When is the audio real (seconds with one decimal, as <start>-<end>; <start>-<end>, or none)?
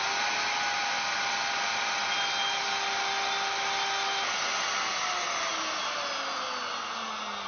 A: 0.0-7.5